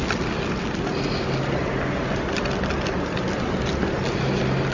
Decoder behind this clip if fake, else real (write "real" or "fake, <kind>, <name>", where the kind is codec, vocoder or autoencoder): real